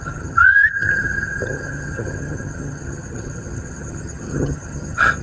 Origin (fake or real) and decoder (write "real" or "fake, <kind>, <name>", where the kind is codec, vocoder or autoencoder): fake, vocoder, HiFi-GAN